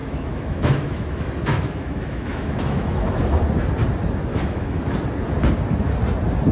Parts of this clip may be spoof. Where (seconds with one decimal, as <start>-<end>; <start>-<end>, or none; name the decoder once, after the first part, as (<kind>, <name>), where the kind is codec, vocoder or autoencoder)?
0.0-3.4 (autoencoder, DAC-VAE); 4.3-4.8